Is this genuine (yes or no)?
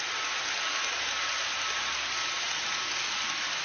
yes